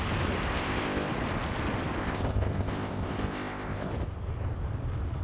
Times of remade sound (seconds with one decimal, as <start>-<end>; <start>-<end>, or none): 0.5-1.1; 2.0-3.9